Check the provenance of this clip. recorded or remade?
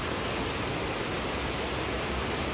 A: recorded